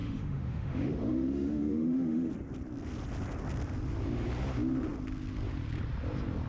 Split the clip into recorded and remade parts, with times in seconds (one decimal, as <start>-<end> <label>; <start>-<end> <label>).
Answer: 0.0-2.3 remade; 2.3-6.5 recorded